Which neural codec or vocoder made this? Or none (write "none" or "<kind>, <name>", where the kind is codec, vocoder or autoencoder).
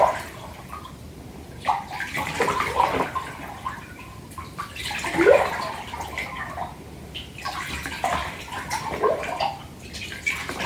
none